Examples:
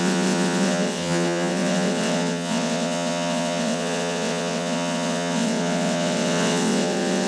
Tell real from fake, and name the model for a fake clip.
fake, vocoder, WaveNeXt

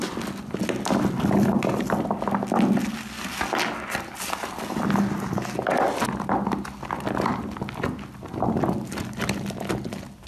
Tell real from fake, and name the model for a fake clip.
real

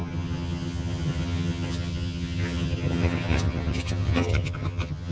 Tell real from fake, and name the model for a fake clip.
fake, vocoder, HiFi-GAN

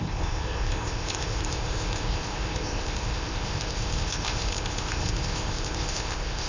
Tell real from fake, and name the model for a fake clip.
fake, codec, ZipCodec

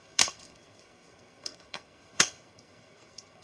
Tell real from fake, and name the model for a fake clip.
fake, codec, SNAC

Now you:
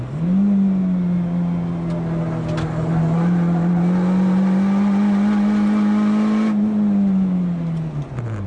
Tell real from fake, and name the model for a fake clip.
real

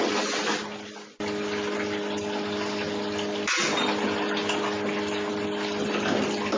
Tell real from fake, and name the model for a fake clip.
real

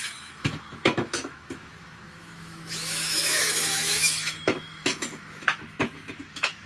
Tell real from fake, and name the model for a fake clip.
fake, autoencoder, DAC-VAE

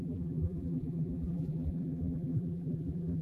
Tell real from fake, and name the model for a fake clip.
fake, vocoder, BigVGAN v2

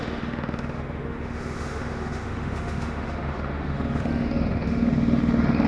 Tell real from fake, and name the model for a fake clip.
fake, autoencoder, DAC-VAE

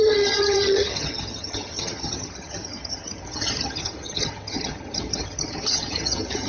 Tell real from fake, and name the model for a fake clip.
fake, vocoder, HiFi-GAN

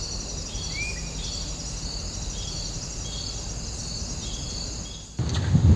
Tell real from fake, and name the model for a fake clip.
real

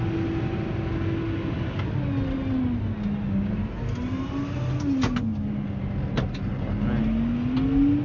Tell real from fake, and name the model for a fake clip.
real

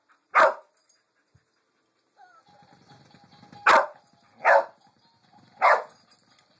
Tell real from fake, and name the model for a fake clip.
real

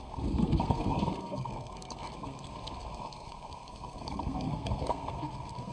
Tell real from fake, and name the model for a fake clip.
fake, codec, SNAC